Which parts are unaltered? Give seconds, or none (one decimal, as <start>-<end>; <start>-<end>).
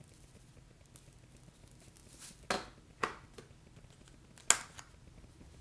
0.0-5.6